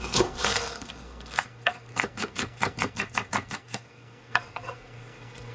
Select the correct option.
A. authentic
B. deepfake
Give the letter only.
B